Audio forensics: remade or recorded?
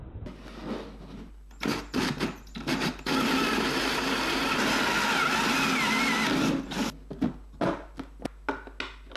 recorded